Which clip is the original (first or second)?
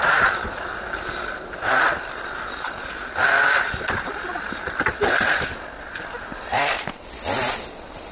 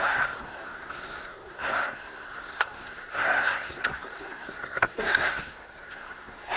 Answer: first